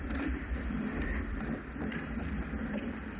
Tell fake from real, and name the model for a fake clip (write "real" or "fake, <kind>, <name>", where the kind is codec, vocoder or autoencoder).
fake, vocoder, BigVGAN v2